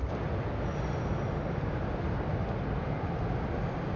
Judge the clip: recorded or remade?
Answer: recorded